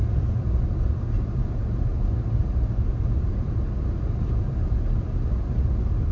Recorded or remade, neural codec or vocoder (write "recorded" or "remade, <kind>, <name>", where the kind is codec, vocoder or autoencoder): remade, vocoder, BigVGAN v2